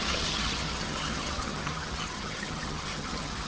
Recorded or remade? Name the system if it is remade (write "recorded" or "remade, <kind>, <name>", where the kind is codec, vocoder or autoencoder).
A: remade, vocoder, HiFi-GAN